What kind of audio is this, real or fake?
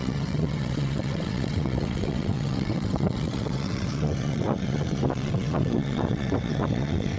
fake